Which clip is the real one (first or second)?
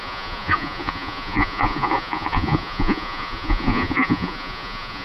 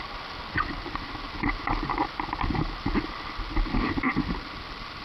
second